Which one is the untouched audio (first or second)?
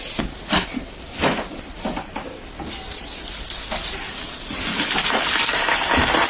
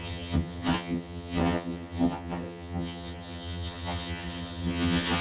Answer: first